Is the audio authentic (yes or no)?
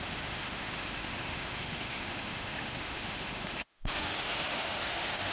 no